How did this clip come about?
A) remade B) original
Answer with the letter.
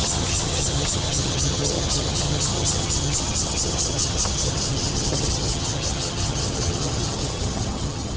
A